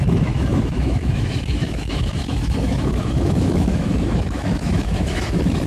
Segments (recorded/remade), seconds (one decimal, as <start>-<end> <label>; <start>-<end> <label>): 0.0-5.7 remade